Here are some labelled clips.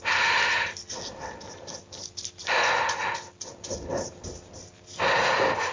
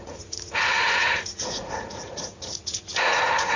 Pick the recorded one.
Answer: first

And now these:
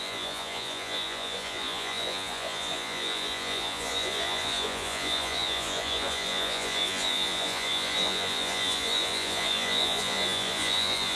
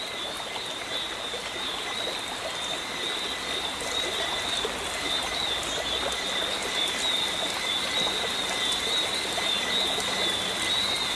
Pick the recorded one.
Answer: second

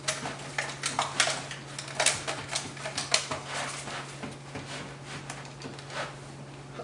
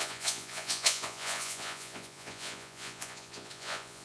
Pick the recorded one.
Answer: first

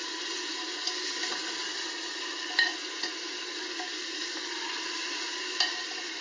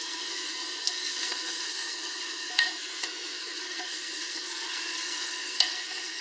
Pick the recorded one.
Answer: first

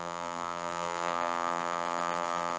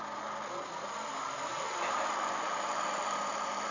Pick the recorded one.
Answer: second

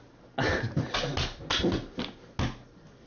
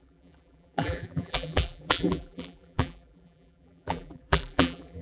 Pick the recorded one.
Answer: first